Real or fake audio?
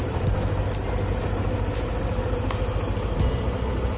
real